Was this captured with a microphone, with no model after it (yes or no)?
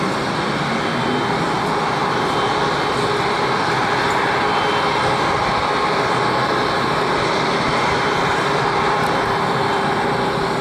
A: yes